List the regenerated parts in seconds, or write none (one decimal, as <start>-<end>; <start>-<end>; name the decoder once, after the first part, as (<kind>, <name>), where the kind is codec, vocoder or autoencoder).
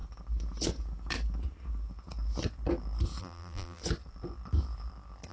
3.2-3.8 (vocoder, BigVGAN v2)